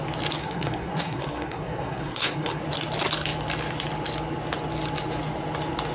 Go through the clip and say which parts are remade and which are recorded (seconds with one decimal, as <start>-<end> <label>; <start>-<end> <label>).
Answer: 0.0-0.4 recorded; 0.4-2.6 remade; 2.6-5.9 recorded